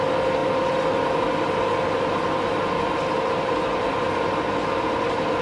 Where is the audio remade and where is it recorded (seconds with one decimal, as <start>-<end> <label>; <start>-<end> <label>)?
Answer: 0.0-5.4 recorded